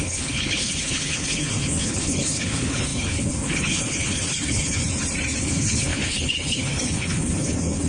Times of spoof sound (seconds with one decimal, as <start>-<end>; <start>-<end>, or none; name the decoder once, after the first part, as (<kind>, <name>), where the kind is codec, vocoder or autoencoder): 0.0-4.8 (codec, HILCodec); 5.4-7.9

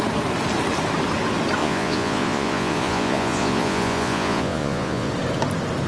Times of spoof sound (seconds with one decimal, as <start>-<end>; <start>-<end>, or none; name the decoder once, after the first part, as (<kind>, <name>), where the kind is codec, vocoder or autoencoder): 1.6-5.1 (vocoder, Vocos)